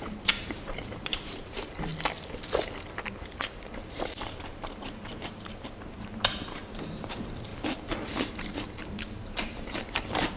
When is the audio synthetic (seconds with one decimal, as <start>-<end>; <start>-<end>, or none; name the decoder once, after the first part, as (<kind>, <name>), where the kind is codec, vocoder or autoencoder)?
0.0-1.9 (vocoder, BigVGAN v2); 3.0-7.5; 8.2-10.4